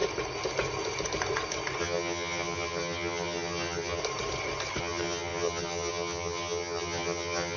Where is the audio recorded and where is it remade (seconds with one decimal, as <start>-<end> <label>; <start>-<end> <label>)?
0.0-1.8 recorded; 1.8-4.0 remade; 4.0-4.8 recorded; 4.8-7.6 remade